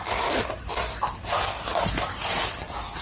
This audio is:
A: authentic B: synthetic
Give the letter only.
A